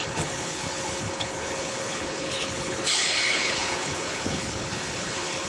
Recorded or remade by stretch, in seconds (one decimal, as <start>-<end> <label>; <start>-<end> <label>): 0.0-5.5 remade